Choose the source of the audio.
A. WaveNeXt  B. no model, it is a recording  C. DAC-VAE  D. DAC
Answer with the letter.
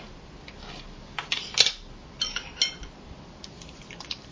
B